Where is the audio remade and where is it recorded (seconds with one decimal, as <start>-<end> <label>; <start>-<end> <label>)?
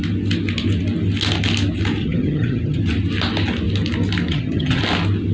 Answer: 0.0-2.0 recorded; 2.0-2.8 remade; 2.8-4.3 recorded; 4.3-4.8 remade; 4.8-5.3 recorded